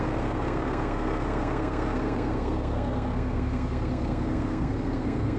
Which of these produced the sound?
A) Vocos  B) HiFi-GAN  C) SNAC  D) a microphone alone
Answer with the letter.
C